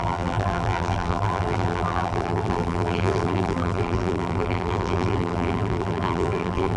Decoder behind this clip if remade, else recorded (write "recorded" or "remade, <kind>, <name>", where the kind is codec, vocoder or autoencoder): remade, vocoder, BigVGAN v2